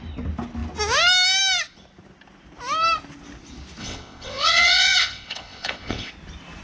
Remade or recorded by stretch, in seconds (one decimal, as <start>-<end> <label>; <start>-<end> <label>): 0.0-3.8 recorded; 3.8-6.1 remade; 6.1-6.6 recorded